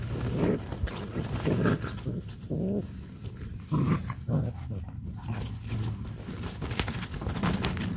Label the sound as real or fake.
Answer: real